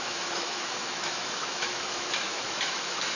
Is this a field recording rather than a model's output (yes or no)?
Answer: no